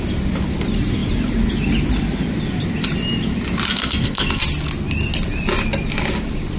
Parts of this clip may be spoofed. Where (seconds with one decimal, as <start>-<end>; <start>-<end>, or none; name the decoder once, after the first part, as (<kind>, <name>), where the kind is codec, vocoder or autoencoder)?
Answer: 3.7-4.4 (codec, SNAC)